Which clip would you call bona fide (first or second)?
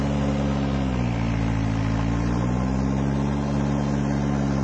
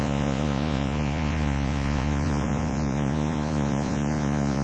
first